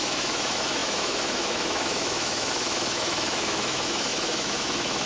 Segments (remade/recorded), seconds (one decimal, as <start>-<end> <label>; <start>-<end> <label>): 0.0-5.1 remade